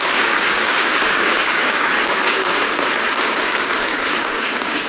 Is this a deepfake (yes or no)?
yes